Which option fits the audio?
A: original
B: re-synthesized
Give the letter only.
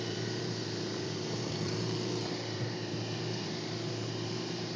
B